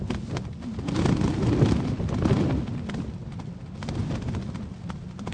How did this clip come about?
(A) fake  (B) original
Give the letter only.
B